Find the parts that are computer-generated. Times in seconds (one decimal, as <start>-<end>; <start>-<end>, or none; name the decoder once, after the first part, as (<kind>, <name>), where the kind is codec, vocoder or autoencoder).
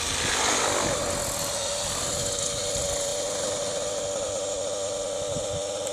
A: none